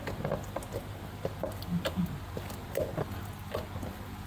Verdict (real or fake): real